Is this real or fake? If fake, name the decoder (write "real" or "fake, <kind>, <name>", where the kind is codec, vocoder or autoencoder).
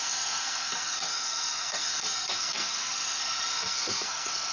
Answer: fake, codec, SNAC